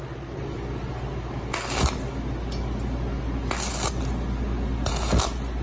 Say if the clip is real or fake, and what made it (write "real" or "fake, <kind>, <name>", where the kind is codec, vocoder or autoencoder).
real